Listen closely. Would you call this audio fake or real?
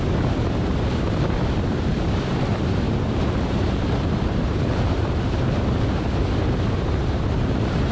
fake